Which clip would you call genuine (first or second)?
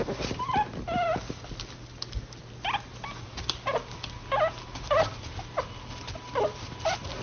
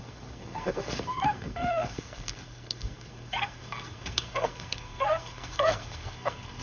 first